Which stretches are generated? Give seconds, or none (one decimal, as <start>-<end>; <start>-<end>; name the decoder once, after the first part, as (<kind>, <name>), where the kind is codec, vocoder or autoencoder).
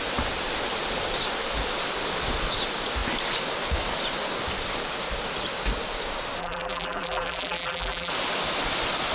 6.4-8.1 (vocoder, BigVGAN v2)